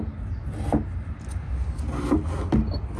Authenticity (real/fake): real